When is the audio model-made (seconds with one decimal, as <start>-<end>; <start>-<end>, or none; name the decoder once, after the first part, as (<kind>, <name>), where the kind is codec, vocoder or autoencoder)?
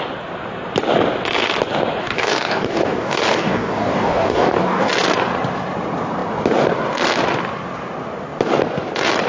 2.0-4.9 (codec, DAC)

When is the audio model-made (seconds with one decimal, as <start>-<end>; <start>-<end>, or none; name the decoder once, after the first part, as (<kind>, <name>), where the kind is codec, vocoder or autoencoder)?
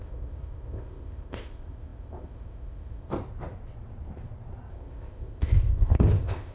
0.0-3.1 (codec, ZipCodec); 4.7-6.5